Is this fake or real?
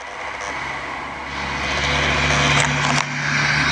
real